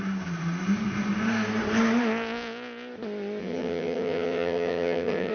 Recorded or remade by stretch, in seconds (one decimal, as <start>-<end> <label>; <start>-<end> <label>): 0.0-3.4 recorded; 3.4-5.3 remade